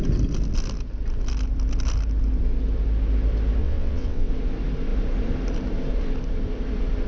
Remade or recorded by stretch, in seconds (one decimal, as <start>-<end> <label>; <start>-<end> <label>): 0.0-3.6 recorded; 3.6-4.3 remade; 4.3-7.1 recorded

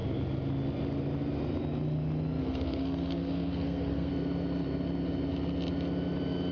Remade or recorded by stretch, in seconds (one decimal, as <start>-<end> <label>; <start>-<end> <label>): 0.0-2.4 recorded; 2.4-4.1 remade; 4.1-6.5 recorded

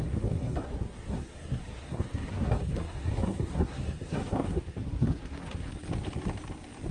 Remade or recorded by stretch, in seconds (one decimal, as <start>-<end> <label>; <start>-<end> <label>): 0.0-5.7 remade; 5.7-6.9 recorded

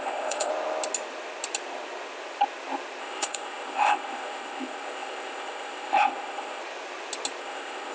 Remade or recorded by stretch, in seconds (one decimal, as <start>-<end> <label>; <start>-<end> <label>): 0.0-0.5 remade; 0.5-3.0 recorded; 3.0-6.6 remade; 6.6-7.4 recorded; 7.4-7.9 remade

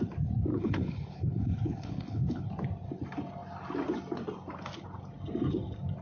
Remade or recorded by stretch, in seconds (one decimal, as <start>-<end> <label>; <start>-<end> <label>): 0.0-0.5 recorded; 0.5-2.5 remade; 2.5-6.0 recorded

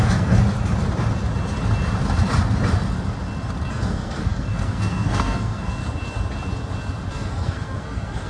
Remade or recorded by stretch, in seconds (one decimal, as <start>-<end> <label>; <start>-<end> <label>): 0.0-0.4 remade; 0.4-3.7 recorded; 3.7-5.8 remade; 5.8-7.1 recorded; 7.1-8.3 remade

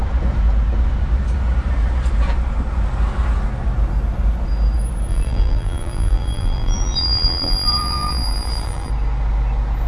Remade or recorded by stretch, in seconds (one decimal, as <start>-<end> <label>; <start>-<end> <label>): 0.0-5.1 recorded; 5.1-8.9 remade; 8.9-9.9 recorded